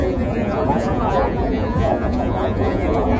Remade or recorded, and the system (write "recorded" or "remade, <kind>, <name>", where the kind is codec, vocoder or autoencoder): remade, vocoder, Vocos